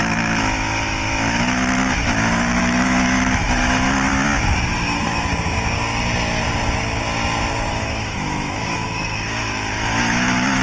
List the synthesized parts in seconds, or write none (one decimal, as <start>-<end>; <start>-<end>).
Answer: 0.0-4.1; 7.7-10.6